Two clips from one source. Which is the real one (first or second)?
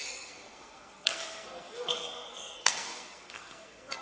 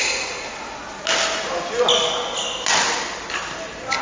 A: second